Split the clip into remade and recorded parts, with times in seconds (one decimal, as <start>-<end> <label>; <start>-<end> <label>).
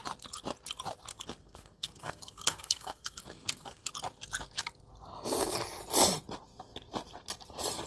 0.0-1.1 recorded; 1.1-3.9 remade; 3.9-7.9 recorded